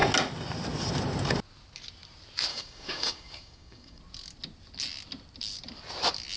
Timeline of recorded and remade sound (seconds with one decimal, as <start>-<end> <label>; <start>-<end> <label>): 0.0-2.5 recorded; 2.5-4.0 remade; 4.0-6.4 recorded